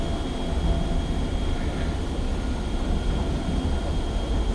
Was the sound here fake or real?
real